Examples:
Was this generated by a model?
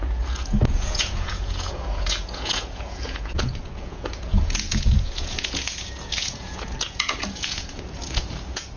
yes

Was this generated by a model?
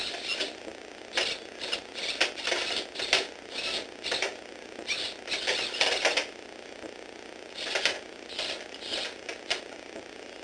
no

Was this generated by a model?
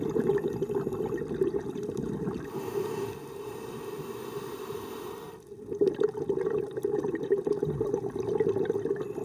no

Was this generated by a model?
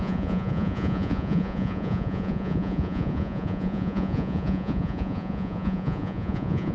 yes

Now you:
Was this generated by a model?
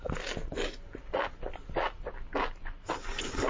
no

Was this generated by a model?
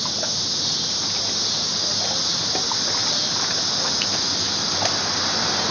no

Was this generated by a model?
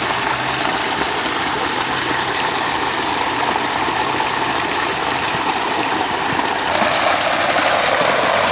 no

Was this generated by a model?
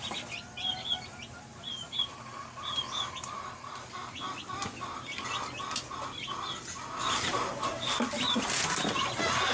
no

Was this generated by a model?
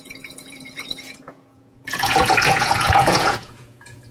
yes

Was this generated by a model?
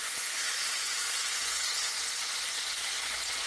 yes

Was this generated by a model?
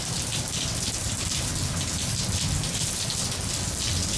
no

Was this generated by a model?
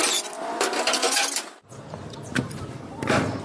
no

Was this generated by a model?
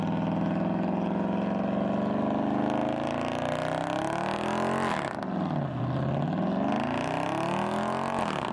no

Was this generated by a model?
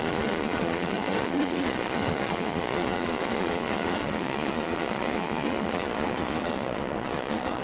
yes